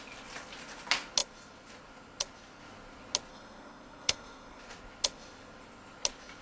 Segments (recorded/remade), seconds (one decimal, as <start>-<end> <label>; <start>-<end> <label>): 0.0-3.3 recorded; 3.3-4.6 remade; 4.6-6.4 recorded